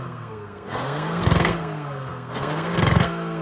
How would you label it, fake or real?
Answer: fake